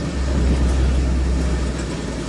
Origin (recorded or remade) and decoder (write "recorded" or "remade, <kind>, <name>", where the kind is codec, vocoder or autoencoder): recorded